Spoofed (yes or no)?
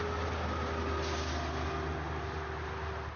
no